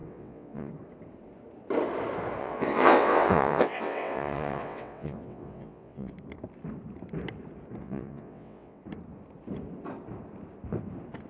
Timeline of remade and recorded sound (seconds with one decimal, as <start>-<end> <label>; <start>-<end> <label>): 0.0-0.7 remade; 0.7-2.4 recorded; 2.4-6.1 remade; 6.1-7.8 recorded; 7.8-8.8 remade; 8.8-11.3 recorded